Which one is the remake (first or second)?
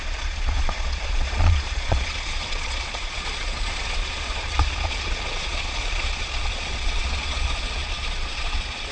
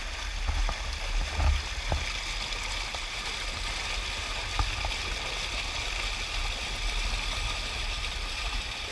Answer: first